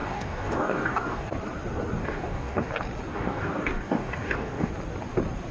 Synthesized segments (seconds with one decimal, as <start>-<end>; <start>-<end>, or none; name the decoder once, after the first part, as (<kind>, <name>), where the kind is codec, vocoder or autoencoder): 0.0-1.3 (codec, DAC); 2.0-2.7; 3.1-4.7